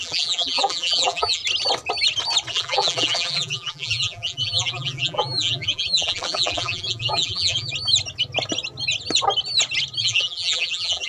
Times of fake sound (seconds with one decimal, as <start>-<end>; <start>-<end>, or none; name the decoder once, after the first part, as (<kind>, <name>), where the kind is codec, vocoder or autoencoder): 0.0-1.4 (vocoder, BigVGAN v2); 2.5-7.7; 10.0-11.1